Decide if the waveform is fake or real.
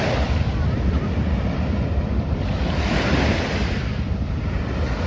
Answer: real